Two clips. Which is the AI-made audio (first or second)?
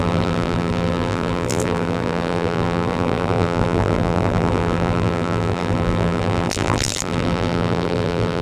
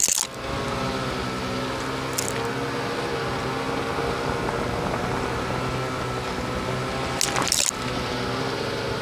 first